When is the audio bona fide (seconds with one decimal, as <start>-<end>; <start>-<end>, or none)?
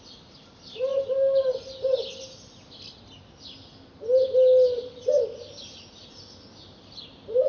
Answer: 0.0-7.5